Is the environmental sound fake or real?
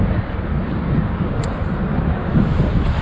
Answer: real